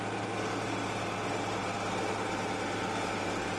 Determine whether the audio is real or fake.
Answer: real